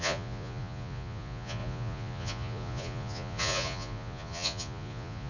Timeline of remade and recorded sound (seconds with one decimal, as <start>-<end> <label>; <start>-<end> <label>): 0.0-5.3 remade